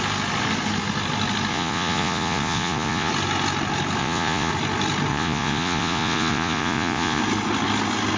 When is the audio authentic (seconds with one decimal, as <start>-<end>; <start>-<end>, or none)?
0.0-1.5; 3.1-4.0; 4.5-5.1; 7.2-8.2